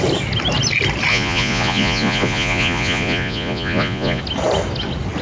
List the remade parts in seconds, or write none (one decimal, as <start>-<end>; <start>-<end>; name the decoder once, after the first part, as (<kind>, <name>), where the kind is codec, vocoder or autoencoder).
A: 1.1-4.2 (vocoder, Vocos)